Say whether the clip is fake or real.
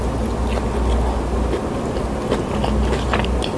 real